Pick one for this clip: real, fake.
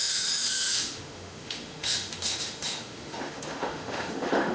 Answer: fake